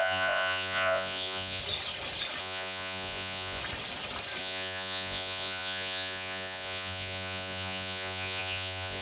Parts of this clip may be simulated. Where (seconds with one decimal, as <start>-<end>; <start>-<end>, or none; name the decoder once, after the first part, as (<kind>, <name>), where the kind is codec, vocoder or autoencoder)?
0.0-1.6 (vocoder, Vocos); 2.4-3.6; 4.4-9.0